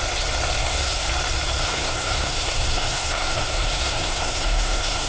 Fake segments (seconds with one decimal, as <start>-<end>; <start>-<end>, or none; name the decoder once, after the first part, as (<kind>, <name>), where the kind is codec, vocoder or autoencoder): 0.6-1.1 (codec, SNAC); 1.6-5.1